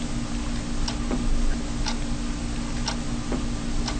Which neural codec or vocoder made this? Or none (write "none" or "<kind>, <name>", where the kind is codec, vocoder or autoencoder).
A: none